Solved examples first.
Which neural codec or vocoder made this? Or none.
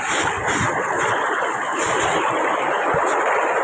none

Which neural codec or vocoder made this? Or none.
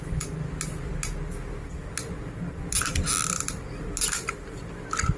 none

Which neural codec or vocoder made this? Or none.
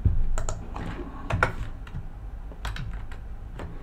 none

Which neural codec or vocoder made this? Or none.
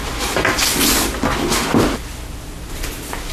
none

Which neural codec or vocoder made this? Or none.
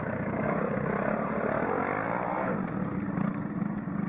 none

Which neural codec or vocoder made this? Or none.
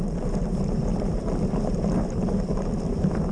vocoder, BigVGAN v2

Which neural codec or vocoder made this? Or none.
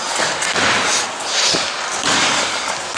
none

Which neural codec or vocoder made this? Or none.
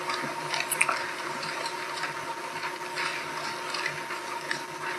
none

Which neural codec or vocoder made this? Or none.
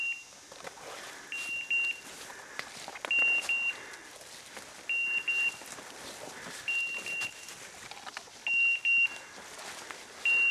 none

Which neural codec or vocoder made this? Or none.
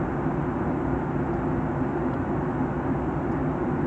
none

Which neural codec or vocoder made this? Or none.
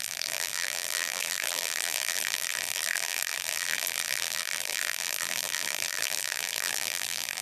vocoder, BigVGAN v2